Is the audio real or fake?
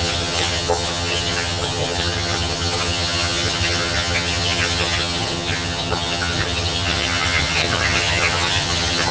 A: fake